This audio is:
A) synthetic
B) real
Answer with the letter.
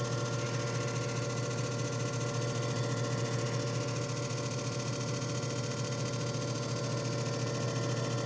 B